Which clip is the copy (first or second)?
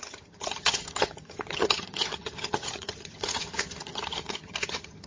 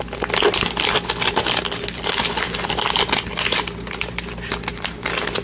first